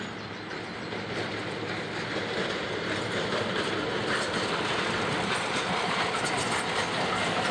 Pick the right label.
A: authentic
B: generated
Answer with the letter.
A